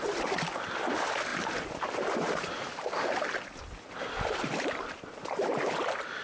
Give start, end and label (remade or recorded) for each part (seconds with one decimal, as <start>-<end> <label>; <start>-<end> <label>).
0.0-6.2 recorded